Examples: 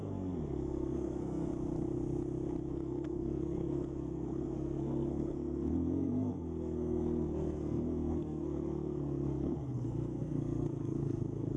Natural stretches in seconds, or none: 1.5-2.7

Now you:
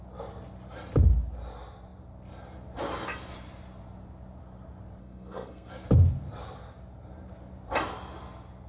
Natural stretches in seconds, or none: 0.0-5.0; 5.7-8.7

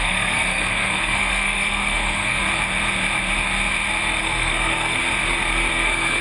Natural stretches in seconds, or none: 2.4-4.2; 5.0-5.7

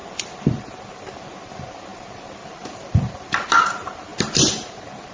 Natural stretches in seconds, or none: 0.0-5.1

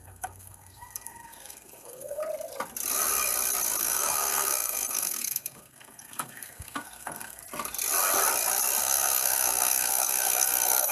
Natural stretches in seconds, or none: 2.2-3.8; 7.4-8.8